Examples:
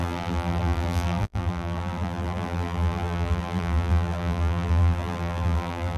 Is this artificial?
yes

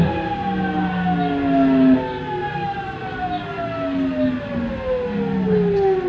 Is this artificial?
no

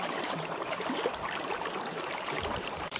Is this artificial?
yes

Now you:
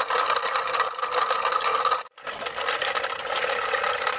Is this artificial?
no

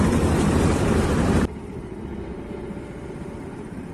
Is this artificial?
yes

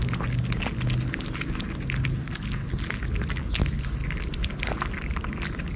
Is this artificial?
no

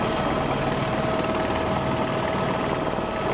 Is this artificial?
no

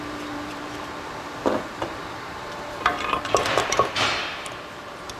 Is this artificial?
yes